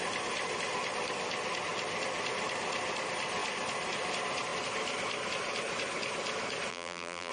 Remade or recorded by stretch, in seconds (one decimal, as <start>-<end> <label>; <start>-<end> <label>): 0.0-6.7 recorded; 6.7-7.3 remade